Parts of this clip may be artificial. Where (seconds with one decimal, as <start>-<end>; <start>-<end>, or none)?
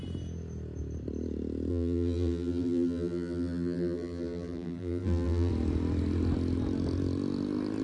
1.7-5.5